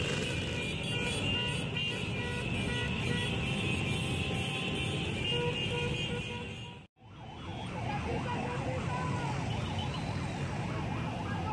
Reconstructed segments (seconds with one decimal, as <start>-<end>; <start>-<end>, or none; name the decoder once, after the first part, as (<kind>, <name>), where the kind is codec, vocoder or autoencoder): none